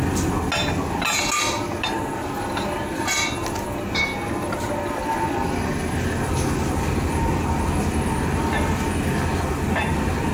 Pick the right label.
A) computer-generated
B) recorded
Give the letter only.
B